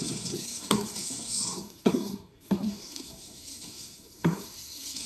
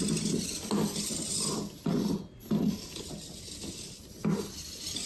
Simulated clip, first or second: first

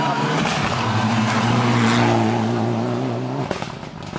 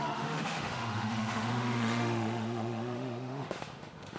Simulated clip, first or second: second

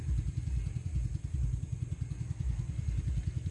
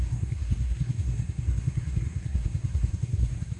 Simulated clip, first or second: second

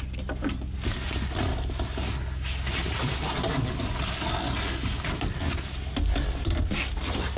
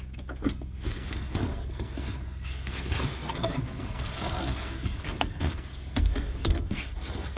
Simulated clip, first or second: second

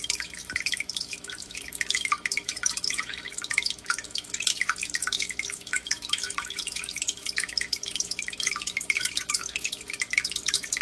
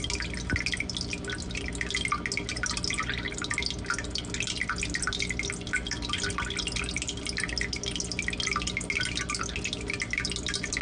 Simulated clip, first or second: first